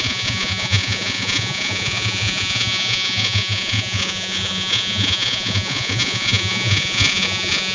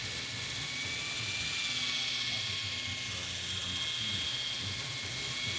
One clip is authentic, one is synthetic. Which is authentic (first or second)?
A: second